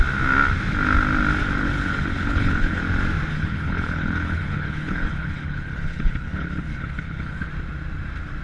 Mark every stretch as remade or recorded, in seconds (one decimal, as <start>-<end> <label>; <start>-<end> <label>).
0.0-1.6 recorded; 1.6-2.8 remade; 2.8-3.3 recorded; 3.3-7.5 remade; 7.5-8.4 recorded